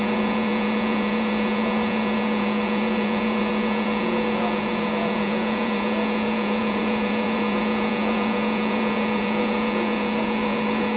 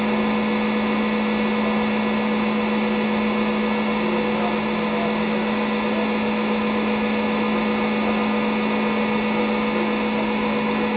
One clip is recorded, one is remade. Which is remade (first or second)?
first